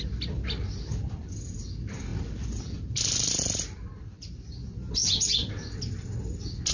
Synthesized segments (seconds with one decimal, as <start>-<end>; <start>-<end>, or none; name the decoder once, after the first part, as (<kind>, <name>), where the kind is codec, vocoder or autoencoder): none